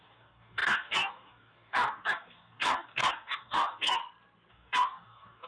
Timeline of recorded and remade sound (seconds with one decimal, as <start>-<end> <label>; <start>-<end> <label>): 0.0-4.0 remade; 4.0-4.5 recorded; 4.5-5.5 remade